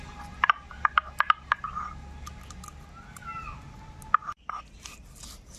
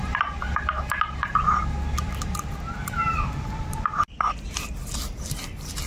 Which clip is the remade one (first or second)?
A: second